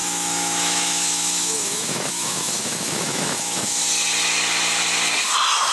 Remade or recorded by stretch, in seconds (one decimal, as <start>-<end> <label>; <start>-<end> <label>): 0.0-3.8 remade; 3.8-5.7 recorded